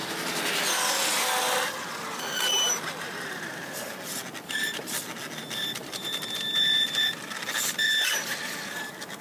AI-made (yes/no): no